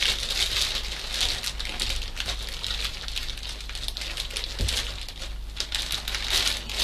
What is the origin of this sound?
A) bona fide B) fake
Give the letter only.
A